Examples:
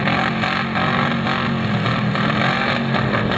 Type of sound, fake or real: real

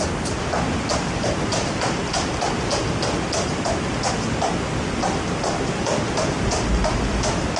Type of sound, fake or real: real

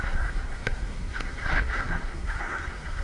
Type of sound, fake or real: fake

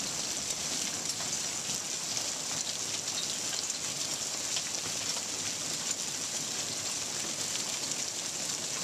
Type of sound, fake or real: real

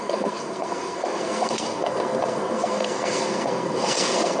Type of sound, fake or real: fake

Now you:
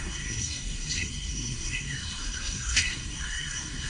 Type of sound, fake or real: fake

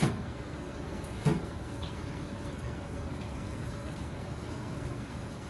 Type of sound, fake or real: fake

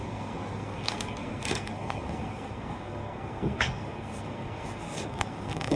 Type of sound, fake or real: fake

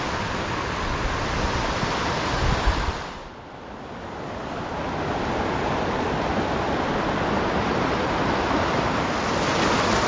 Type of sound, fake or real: real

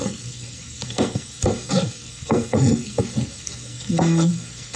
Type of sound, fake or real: fake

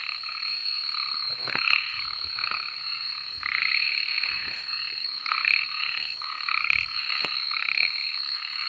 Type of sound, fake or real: fake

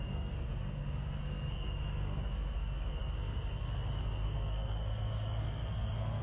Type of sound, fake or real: fake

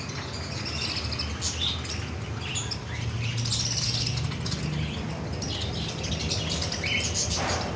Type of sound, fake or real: real